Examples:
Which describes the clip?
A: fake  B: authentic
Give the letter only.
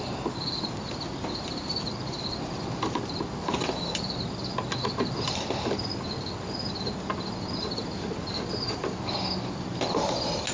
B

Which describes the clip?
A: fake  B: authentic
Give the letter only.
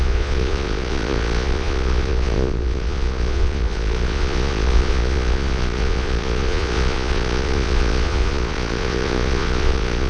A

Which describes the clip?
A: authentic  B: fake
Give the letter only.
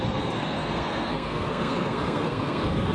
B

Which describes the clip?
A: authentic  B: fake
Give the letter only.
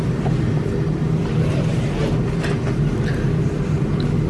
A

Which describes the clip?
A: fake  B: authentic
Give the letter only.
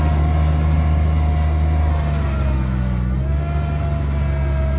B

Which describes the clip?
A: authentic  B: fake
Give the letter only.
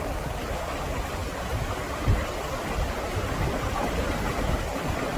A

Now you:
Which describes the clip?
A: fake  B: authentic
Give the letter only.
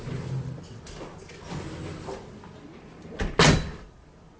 B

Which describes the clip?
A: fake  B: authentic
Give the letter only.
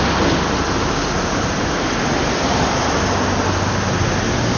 B